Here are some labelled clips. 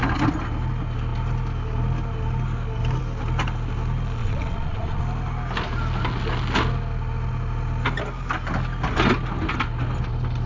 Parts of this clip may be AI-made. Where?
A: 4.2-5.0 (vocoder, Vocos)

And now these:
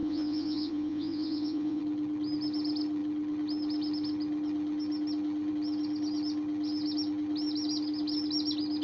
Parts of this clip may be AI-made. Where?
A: 0.0-1.8 (vocoder, Vocos)

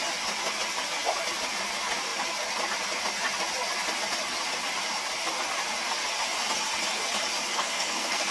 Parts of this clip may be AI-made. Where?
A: 7.5-8.3 (codec, SNAC)

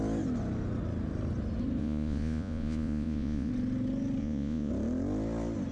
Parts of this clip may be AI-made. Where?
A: 1.8-3.5 (vocoder, Vocos); 4.2-4.7

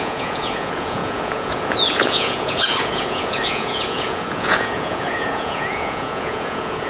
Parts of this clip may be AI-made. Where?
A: 0.0-6.9 (vocoder, Vocos)

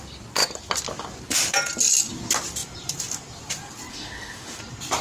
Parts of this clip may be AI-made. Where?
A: 3.9-4.6 (autoencoder, DAC-VAE)